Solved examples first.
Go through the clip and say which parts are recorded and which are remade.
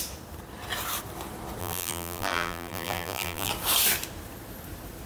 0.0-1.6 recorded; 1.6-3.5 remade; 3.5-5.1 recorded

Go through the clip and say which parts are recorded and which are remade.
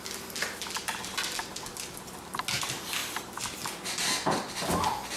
0.0-5.2 recorded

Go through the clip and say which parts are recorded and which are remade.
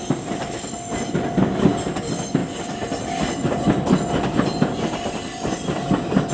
0.0-2.4 recorded; 2.4-6.3 remade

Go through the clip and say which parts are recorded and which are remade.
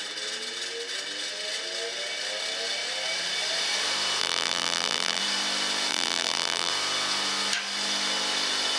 0.0-4.2 recorded; 4.2-5.2 remade; 5.2-5.9 recorded; 5.9-6.7 remade; 6.7-8.8 recorded